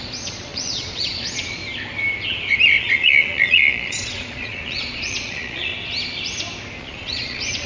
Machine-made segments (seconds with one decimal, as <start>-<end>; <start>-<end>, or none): 0.0-1.6; 2.8-5.7; 6.8-7.7